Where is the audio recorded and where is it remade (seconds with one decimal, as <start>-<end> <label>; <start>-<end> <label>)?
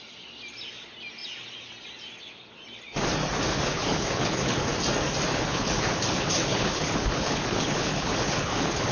0.0-3.5 recorded; 3.5-4.7 remade; 4.7-5.3 recorded; 5.3-8.9 remade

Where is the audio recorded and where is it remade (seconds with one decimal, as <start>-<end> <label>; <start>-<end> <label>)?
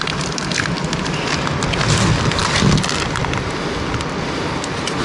0.0-5.0 recorded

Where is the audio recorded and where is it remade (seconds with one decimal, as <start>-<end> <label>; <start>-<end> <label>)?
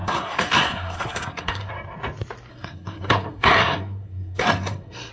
0.0-1.7 remade; 1.7-2.5 recorded; 2.5-5.1 remade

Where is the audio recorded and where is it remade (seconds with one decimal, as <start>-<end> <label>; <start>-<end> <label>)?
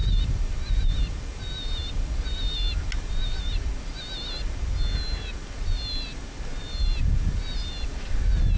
0.0-8.6 recorded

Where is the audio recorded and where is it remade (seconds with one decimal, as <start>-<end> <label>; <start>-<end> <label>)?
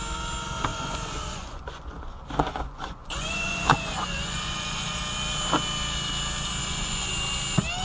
0.0-0.7 recorded; 0.7-5.0 remade; 5.0-6.6 recorded; 6.6-7.1 remade; 7.1-7.8 recorded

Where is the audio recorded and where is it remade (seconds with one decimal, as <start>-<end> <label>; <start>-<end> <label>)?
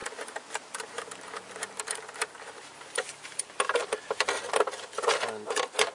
0.0-1.9 remade; 1.9-3.8 recorded; 3.8-5.1 remade; 5.1-5.9 recorded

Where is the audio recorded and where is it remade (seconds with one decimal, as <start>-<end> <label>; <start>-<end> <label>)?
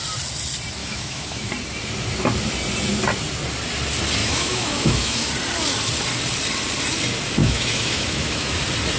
0.0-0.8 recorded; 0.8-1.5 remade; 1.5-4.2 recorded; 4.2-5.3 remade; 5.3-7.4 recorded; 7.4-8.6 remade; 8.6-9.0 recorded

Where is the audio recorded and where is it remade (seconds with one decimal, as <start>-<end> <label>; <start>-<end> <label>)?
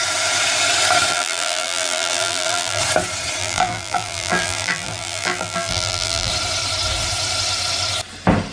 0.0-1.1 recorded; 1.1-2.8 remade; 2.8-3.4 recorded; 3.4-6.3 remade; 6.3-8.5 recorded